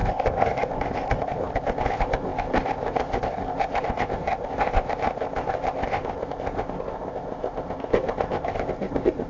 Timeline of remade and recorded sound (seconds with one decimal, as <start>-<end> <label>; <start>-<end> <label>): 0.0-9.3 remade